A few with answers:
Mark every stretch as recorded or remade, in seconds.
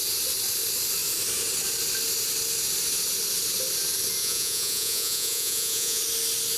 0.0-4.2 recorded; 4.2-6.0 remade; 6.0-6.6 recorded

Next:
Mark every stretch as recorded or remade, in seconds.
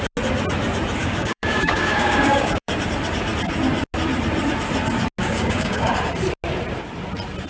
0.0-1.0 recorded; 1.0-2.7 remade; 2.7-5.2 recorded; 5.2-5.9 remade; 5.9-7.5 recorded